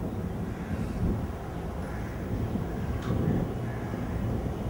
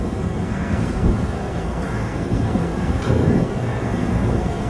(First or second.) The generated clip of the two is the second